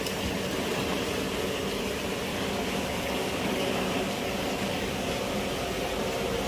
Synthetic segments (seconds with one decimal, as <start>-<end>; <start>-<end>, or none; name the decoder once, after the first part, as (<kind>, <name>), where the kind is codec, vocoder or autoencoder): 2.3-5.2 (codec, DAC)